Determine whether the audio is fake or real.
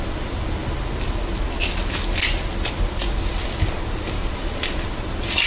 real